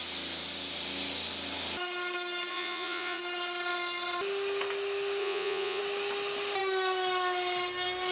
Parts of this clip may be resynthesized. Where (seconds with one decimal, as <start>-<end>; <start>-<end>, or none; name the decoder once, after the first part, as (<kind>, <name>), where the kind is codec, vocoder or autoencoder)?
2.5-3.2 (vocoder, Vocos); 5.2-5.8

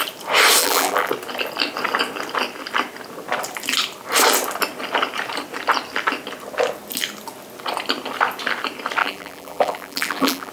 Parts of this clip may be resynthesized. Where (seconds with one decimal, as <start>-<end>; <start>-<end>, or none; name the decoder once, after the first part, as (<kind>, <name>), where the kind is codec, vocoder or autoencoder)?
0.6-1.1 (vocoder, BigVGAN v2); 9.0-10.5

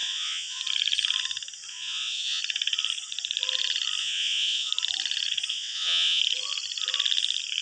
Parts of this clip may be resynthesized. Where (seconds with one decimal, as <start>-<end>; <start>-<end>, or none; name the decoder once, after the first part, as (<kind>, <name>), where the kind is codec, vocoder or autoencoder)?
0.0-0.6 (vocoder, Vocos); 1.7-2.4; 4.0-4.7; 5.5-6.2

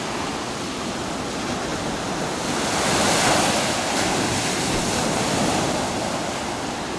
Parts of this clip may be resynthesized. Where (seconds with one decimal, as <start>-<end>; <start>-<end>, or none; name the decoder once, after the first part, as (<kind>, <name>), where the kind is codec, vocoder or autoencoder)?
none

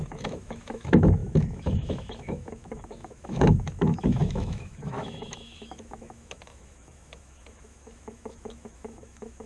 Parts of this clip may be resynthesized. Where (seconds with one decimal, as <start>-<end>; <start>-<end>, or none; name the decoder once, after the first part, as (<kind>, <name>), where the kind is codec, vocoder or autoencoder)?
0.0-9.5 (autoencoder, DAC-VAE)

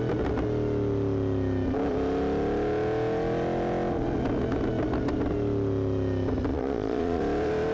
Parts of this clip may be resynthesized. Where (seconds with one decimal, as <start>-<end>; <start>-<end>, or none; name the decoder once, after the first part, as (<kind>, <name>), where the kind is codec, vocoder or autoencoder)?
6.5-7.2 (vocoder, Vocos)

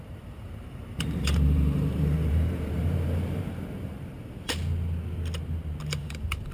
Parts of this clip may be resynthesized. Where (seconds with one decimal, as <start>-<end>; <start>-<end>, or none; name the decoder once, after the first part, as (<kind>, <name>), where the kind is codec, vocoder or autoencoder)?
0.0-4.6 (vocoder, BigVGAN v2); 6.0-6.5